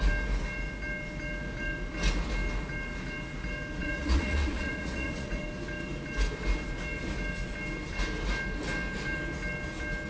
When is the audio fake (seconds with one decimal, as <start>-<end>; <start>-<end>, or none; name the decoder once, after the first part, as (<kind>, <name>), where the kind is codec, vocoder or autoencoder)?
3.8-5.4 (vocoder, Vocos)